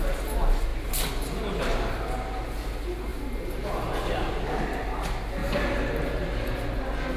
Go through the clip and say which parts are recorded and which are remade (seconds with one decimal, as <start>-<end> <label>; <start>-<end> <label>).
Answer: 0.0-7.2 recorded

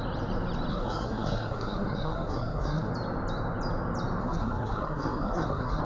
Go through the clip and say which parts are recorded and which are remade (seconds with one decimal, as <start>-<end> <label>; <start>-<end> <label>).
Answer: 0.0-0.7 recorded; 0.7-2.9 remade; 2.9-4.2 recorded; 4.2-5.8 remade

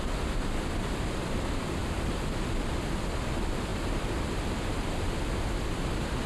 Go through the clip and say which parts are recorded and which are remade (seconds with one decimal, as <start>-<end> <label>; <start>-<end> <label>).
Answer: 0.0-6.3 recorded

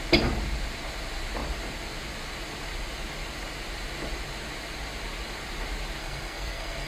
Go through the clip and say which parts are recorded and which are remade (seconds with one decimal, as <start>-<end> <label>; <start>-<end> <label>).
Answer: 0.0-6.0 recorded; 6.0-6.9 remade